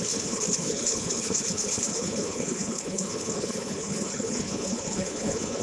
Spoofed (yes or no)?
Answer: yes